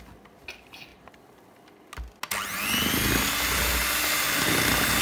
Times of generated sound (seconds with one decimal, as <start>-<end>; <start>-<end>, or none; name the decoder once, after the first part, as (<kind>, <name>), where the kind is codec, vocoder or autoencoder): none